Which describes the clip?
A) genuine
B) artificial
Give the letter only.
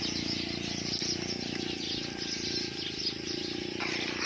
A